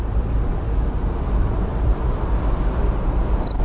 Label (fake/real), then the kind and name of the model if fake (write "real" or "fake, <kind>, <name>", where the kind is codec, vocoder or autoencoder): real